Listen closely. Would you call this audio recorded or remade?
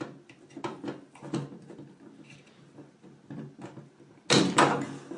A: recorded